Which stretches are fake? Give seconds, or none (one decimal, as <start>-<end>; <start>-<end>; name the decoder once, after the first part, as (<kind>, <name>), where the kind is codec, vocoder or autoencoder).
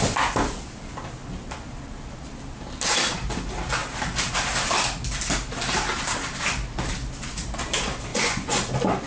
8.1-8.7 (vocoder, Vocos)